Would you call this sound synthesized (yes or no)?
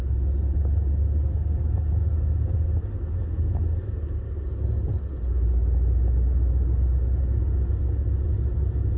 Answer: no